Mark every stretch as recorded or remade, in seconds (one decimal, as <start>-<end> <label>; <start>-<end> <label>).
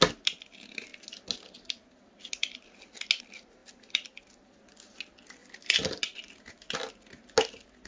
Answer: 0.0-3.6 recorded; 3.6-4.2 remade; 4.2-7.9 recorded